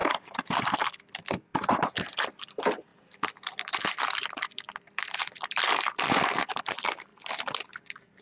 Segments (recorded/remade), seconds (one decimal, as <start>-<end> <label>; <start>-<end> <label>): 0.0-1.0 remade; 1.0-1.5 recorded; 1.5-2.5 remade; 2.5-2.9 recorded; 2.9-6.6 remade; 6.6-7.1 recorded; 7.1-8.2 remade